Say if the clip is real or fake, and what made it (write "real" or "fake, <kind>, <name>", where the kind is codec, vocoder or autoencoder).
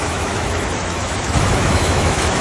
fake, autoencoder, DAC-VAE